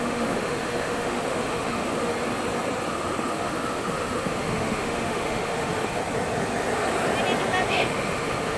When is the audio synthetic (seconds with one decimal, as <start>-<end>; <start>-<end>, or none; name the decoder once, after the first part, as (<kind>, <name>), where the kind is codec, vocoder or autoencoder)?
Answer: 0.0-2.1 (autoencoder, DAC-VAE); 2.9-6.0; 7.7-8.6